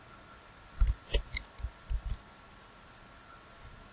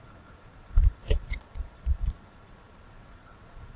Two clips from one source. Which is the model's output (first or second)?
second